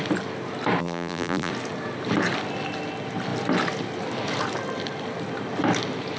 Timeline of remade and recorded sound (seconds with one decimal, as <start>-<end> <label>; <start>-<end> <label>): 0.0-0.8 recorded; 0.8-1.5 remade; 1.5-6.2 recorded